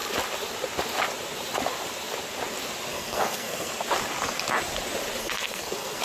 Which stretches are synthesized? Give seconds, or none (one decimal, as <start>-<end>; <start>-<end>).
2.9-3.7; 5.2-6.0